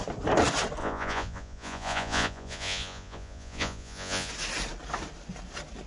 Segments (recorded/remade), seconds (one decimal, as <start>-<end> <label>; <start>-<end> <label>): 0.0-0.8 recorded; 0.8-4.3 remade; 4.3-5.9 recorded